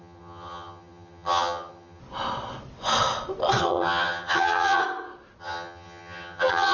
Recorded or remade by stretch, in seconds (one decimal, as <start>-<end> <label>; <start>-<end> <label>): 0.0-2.0 remade; 2.0-3.6 recorded; 3.6-4.8 remade; 4.8-5.4 recorded; 5.4-6.7 remade